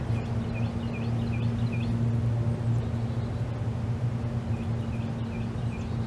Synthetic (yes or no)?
no